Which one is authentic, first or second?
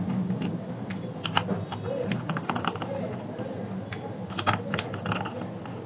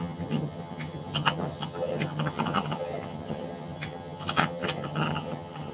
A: first